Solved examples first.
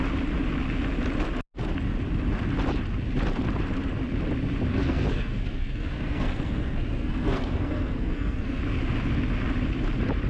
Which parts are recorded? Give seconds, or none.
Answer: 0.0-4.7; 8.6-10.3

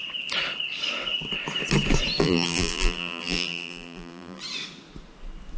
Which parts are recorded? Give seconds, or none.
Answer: 0.0-2.2; 4.4-5.6